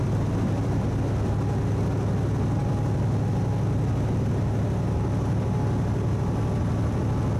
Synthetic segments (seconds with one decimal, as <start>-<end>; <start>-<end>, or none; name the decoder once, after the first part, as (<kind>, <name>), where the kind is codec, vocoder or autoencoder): none